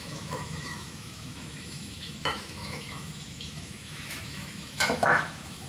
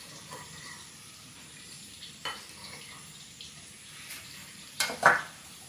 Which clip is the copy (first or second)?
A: first